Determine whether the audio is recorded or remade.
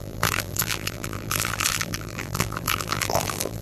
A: remade